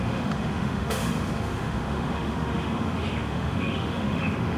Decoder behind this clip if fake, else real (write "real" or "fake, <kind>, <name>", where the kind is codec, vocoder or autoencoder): fake, autoencoder, DAC-VAE